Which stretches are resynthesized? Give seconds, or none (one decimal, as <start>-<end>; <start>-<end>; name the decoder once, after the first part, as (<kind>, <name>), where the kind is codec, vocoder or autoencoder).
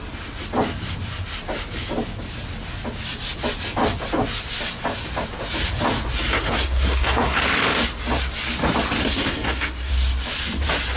6.3-7.4 (codec, SNAC); 9.0-9.9